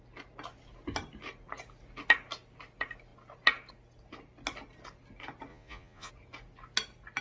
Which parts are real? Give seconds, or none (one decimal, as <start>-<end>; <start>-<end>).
0.0-5.5; 6.1-7.2